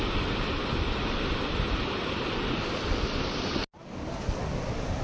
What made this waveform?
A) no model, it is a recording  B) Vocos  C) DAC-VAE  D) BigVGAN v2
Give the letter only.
A